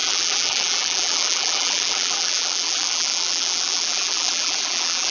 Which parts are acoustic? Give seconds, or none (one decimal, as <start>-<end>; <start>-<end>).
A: none